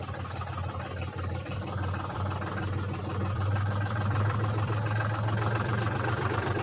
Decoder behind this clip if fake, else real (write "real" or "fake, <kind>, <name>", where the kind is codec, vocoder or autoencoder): fake, vocoder, BigVGAN v2